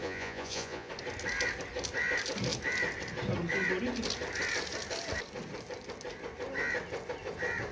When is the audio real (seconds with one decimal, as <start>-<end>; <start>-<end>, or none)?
0.9-7.7